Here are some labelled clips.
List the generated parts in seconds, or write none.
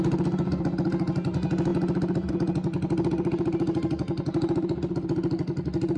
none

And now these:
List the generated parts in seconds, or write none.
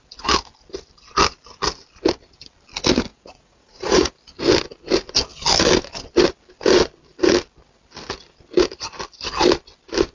3.1-4.1 (vocoder, Vocos)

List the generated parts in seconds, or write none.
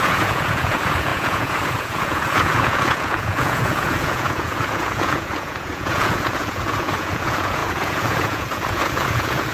0.0-9.5 (vocoder, Vocos)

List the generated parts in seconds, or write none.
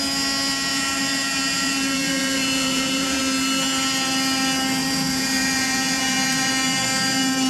0.7-3.2 (vocoder, Vocos); 4.8-6.5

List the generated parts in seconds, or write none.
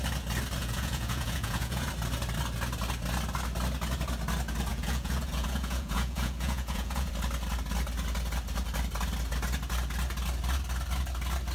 0.6-1.9 (vocoder, Vocos); 4.7-7.1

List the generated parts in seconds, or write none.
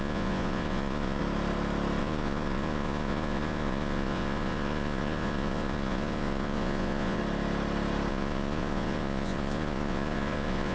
0.0-1.2 (vocoder, Vocos); 2.0-7.2; 8.1-10.7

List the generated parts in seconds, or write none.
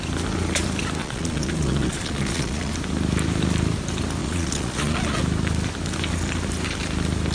1.0-2.7 (vocoder, Vocos); 4.2-5.2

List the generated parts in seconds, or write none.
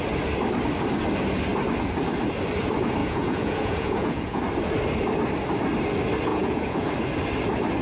3.0-4.4 (vocoder, Vocos); 6.3-6.9